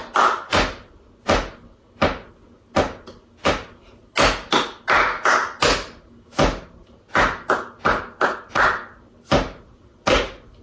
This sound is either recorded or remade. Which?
recorded